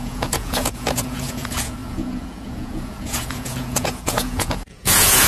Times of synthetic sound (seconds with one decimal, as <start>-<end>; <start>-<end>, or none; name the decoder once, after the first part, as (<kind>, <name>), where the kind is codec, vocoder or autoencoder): 0.0-5.3 (vocoder, Vocos)